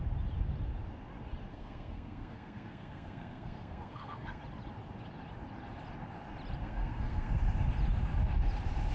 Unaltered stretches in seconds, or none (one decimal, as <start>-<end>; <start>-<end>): 0.0-1.5; 4.4-6.6; 7.4-8.9